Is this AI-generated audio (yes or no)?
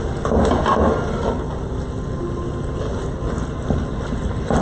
no